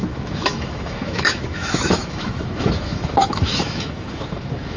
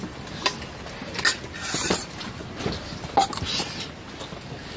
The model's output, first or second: first